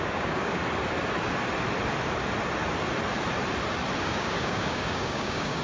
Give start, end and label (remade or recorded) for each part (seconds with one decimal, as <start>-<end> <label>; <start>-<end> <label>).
0.0-0.6 remade; 0.6-4.0 recorded; 4.0-5.6 remade